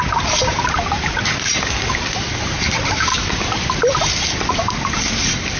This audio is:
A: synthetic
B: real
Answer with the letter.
B